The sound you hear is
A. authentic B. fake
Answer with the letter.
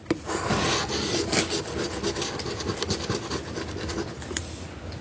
A